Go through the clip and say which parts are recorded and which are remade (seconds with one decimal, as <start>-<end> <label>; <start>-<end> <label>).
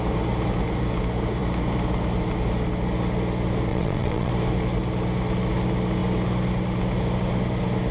0.0-3.7 recorded; 3.7-4.3 remade; 4.3-7.9 recorded